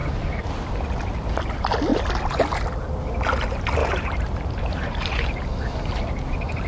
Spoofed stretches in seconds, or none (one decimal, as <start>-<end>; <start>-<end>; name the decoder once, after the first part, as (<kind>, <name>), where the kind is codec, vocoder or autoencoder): 0.0-0.6 (vocoder, BigVGAN v2); 3.8-5.6